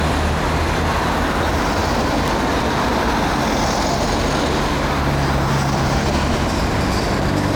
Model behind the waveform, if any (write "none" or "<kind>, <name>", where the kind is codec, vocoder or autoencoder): none